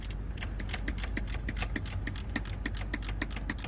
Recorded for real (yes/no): yes